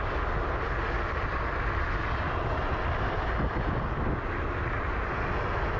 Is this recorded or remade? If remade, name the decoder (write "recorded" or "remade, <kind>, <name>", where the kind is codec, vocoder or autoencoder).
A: recorded